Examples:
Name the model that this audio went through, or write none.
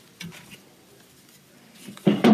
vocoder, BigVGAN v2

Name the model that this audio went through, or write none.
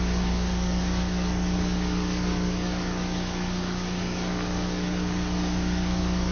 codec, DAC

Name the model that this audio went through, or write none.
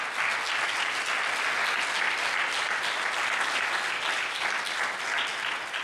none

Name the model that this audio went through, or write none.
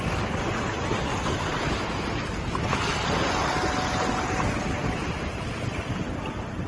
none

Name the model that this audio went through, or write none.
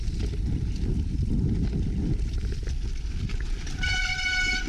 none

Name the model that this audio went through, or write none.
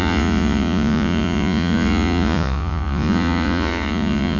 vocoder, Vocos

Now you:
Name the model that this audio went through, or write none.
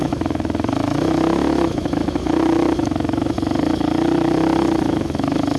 autoencoder, DAC-VAE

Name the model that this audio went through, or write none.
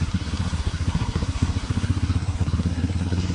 codec, SNAC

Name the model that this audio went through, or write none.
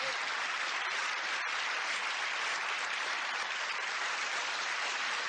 none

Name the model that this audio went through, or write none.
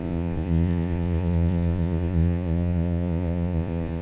vocoder, Vocos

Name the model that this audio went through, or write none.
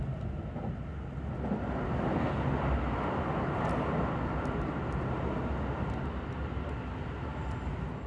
none